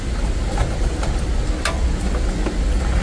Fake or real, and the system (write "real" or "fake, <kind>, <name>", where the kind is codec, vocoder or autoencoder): real